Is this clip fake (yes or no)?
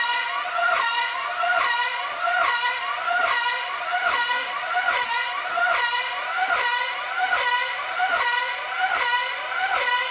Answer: no